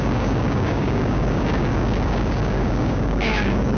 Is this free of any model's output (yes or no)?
no